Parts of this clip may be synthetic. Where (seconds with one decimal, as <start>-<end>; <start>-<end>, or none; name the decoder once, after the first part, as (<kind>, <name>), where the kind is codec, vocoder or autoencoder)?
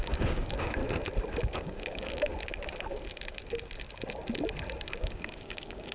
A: 0.0-0.8 (codec, DAC); 1.4-2.3; 5.0-5.9